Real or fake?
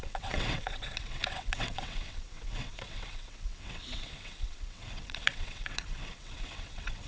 fake